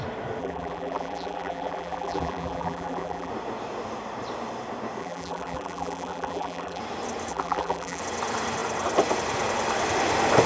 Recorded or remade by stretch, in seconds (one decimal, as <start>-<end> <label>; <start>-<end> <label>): 0.0-0.4 recorded; 0.4-3.3 remade; 3.3-5.0 recorded; 5.0-6.8 remade; 6.8-7.3 recorded; 7.3-8.0 remade; 8.0-10.5 recorded

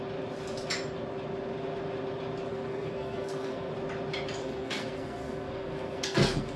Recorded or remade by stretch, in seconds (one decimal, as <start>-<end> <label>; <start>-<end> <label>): 0.0-2.5 recorded; 2.5-3.7 remade; 3.7-4.4 recorded; 4.4-6.6 remade

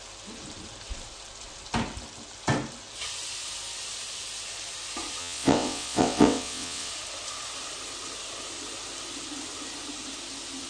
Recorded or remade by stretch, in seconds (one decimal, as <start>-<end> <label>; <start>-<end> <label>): 0.0-5.2 recorded; 5.2-6.9 remade; 6.9-10.7 recorded

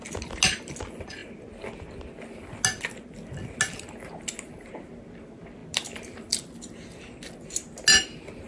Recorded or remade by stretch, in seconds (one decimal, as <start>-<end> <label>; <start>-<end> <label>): 0.0-8.5 recorded